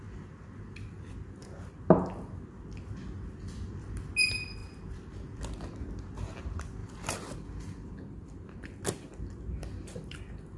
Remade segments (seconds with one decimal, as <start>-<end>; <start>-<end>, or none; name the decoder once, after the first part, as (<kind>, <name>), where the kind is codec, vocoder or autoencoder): none